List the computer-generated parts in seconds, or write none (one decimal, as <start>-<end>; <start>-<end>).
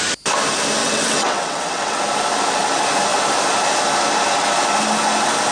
0.8-2.0